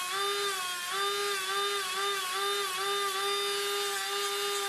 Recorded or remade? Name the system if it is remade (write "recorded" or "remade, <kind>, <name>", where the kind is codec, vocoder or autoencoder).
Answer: recorded